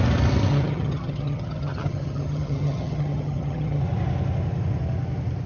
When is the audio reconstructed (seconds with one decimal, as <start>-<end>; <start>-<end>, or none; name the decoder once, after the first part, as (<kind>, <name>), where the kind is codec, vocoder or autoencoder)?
0.5-3.8 (vocoder, HiFi-GAN)

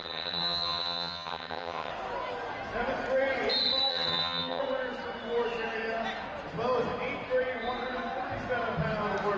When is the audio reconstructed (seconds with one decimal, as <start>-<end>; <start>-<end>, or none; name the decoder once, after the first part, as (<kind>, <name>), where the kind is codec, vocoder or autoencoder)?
0.0-1.9 (vocoder, HiFi-GAN); 3.9-4.6